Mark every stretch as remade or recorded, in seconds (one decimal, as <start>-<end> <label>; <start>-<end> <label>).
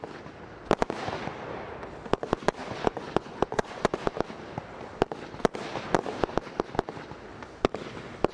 0.0-2.6 recorded; 2.6-4.0 remade; 4.0-8.3 recorded